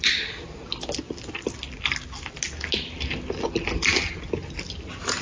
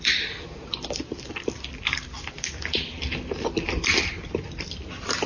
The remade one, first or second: second